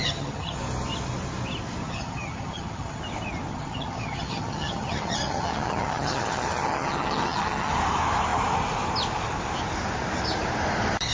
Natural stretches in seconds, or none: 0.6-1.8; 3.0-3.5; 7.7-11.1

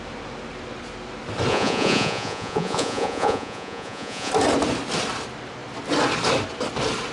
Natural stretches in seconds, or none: 0.0-1.5; 4.3-7.1

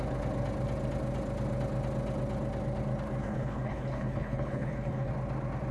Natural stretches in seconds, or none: 0.0-3.2; 5.1-5.7

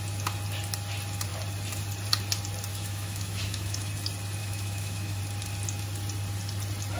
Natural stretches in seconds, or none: 0.0-2.7; 3.9-4.4; 5.2-7.0

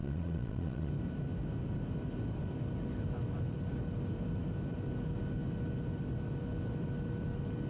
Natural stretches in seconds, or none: 0.9-7.7

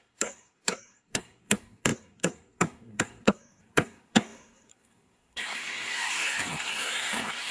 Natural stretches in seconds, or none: none